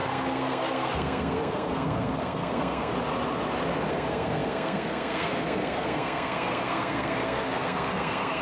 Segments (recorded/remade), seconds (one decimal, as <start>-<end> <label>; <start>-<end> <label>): 0.0-2.9 remade; 2.9-3.9 recorded; 3.9-8.4 remade